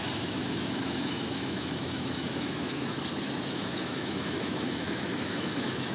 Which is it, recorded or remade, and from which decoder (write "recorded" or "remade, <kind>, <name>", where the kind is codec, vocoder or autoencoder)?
remade, autoencoder, DAC-VAE